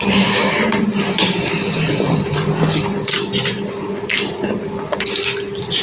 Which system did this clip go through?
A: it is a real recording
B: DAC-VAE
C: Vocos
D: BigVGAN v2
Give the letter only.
D